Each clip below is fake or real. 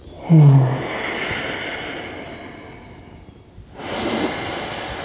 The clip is real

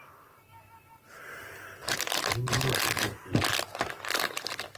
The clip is real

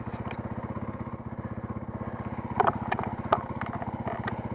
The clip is real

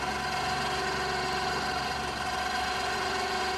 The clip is real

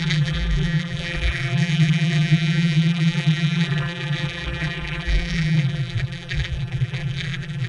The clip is fake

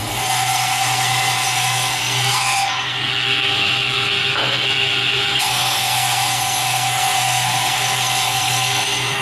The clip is fake